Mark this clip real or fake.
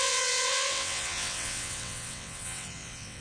fake